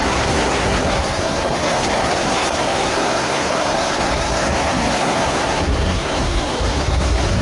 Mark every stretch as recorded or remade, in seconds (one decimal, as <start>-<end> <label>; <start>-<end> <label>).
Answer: 0.0-7.4 remade